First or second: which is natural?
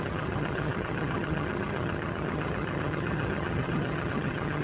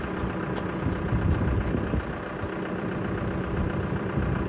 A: second